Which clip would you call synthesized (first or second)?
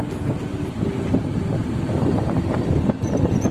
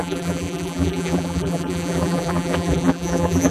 second